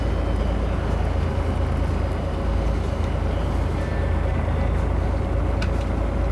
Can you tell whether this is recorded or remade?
recorded